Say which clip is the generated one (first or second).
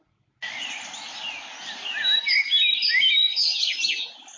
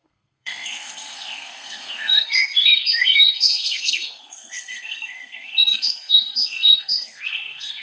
second